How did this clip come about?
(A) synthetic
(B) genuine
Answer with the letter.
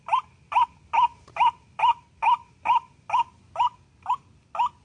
B